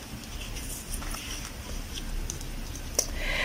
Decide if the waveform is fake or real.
real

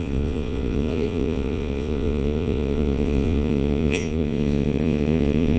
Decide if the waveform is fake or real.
fake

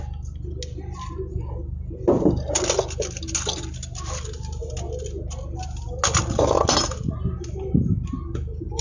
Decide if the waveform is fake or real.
real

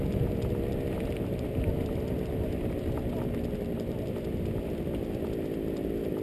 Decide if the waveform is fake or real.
real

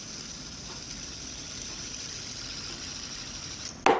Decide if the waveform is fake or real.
real